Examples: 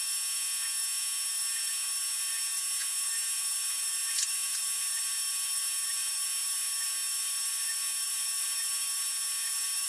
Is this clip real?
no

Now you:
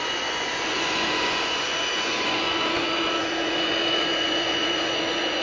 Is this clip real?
no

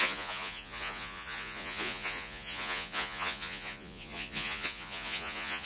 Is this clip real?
no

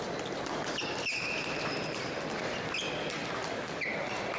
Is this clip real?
yes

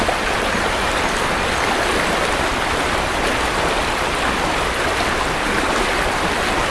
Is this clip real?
yes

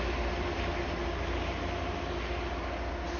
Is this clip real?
yes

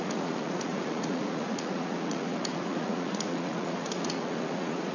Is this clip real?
no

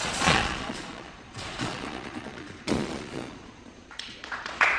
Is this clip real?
no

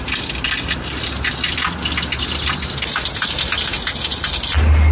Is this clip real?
yes